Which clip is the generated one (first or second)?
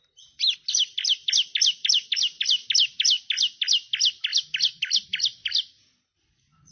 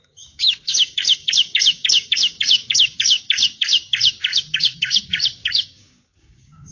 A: second